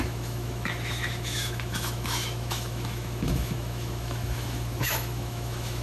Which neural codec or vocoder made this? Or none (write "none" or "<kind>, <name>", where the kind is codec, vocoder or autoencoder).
autoencoder, DAC-VAE